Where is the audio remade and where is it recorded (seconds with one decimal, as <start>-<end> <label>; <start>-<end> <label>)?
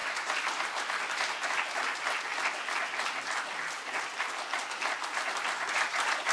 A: 0.0-6.3 recorded